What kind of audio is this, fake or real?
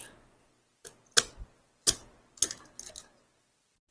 real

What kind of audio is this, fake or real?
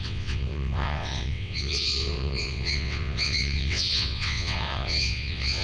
fake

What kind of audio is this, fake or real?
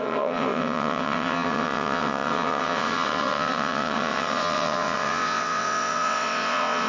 fake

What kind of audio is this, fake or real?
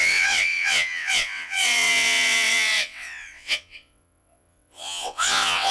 fake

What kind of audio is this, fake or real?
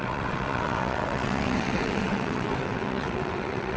fake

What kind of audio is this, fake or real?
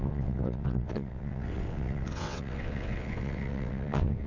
fake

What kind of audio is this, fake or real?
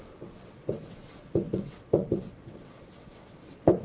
fake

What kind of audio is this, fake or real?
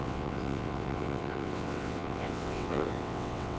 fake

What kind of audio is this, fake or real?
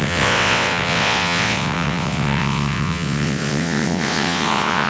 fake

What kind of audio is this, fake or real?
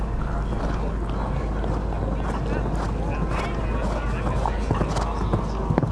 real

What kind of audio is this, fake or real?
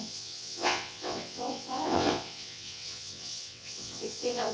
fake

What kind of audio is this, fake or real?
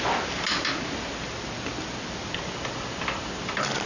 real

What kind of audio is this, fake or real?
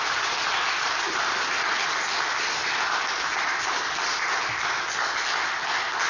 real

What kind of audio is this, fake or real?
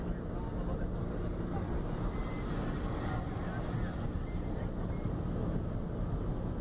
real